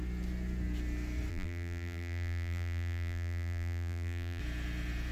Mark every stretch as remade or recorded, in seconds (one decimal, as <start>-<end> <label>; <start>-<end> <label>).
0.0-1.3 recorded; 1.3-4.4 remade; 4.4-5.1 recorded